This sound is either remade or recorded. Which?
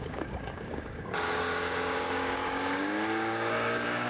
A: remade